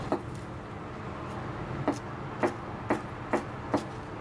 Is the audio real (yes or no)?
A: yes